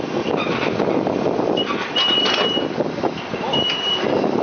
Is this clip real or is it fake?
fake